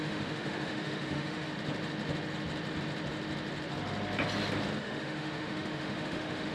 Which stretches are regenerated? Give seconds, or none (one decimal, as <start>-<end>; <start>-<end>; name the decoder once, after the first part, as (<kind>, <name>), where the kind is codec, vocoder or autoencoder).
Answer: 0.0-1.5 (autoencoder, DAC-VAE); 4.8-6.5